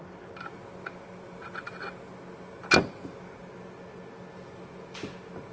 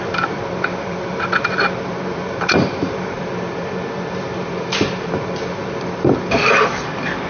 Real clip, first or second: first